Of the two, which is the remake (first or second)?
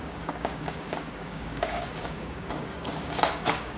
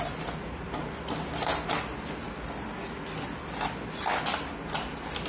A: first